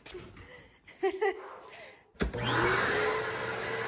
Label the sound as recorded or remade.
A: recorded